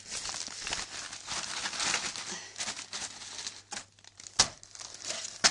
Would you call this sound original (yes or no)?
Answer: yes